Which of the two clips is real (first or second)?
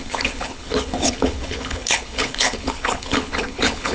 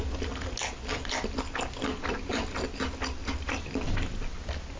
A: second